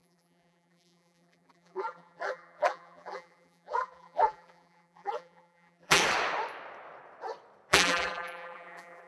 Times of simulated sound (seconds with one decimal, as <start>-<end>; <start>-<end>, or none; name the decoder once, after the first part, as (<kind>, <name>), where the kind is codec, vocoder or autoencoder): 0.0-6.0 (vocoder, BigVGAN v2); 7.7-9.1